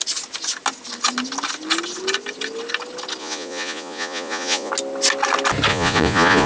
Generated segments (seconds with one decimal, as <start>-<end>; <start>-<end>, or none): 3.2-4.7; 5.7-6.5